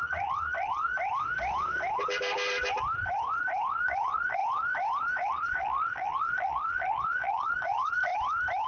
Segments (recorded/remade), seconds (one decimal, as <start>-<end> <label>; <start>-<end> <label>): 0.0-0.9 remade; 0.9-3.7 recorded; 3.7-4.4 remade; 4.4-5.3 recorded; 5.3-8.1 remade; 8.1-8.7 recorded